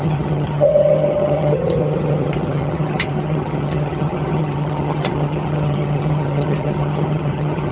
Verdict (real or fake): fake